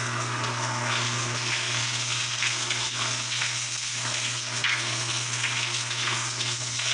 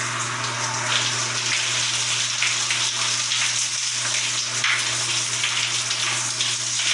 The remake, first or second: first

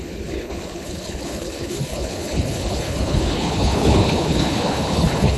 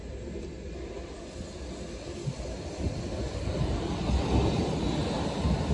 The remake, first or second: first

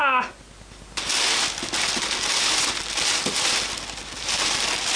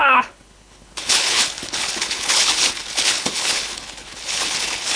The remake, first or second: second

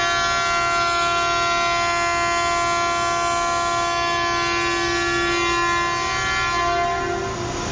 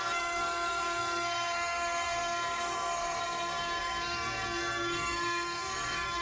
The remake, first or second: second